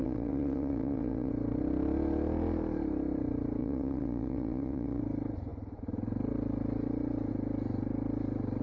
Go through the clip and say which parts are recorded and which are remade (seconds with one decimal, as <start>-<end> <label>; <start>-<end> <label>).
0.0-1.3 remade; 1.3-3.6 recorded; 3.6-5.0 remade; 5.0-8.6 recorded

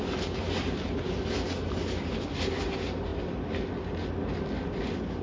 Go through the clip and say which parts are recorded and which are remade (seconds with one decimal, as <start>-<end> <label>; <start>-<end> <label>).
0.0-5.2 recorded

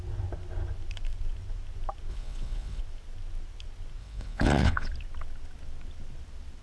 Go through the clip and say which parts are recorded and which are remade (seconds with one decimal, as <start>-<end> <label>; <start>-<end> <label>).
0.0-2.1 recorded; 2.1-2.8 remade; 2.8-4.0 recorded; 4.0-4.9 remade; 4.9-6.6 recorded